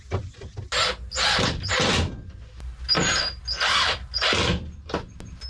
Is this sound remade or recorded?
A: recorded